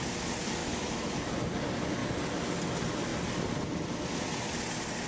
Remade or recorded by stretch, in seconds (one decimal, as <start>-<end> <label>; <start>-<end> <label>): 0.0-0.6 recorded; 0.6-1.3 remade; 1.3-5.1 recorded